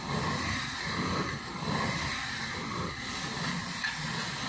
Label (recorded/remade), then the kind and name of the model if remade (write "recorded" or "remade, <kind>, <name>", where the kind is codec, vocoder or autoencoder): recorded